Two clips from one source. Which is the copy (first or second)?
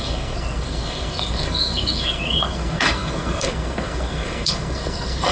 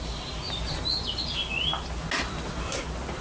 first